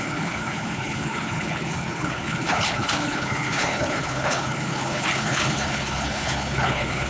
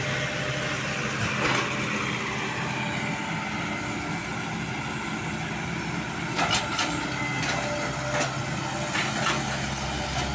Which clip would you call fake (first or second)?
first